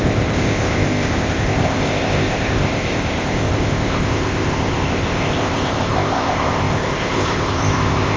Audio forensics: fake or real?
fake